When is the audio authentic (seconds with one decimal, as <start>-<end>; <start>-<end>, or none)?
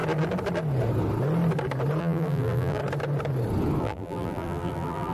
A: 0.0-2.0; 2.8-3.8